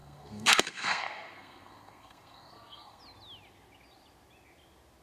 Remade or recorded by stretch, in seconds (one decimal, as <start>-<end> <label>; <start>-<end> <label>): 0.0-3.0 remade; 3.0-5.0 recorded